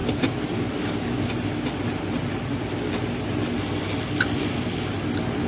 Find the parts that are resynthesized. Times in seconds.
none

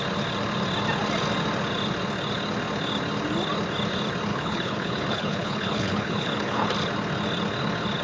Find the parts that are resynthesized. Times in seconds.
4.3-6.7 (codec, HILCodec)